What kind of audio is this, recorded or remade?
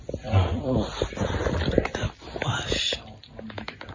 recorded